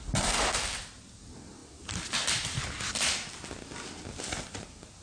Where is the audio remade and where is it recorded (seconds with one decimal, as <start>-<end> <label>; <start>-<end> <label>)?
0.0-5.0 recorded